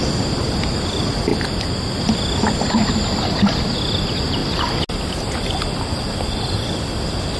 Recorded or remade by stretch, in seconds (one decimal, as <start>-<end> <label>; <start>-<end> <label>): 0.0-7.4 recorded